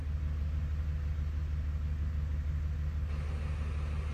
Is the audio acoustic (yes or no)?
yes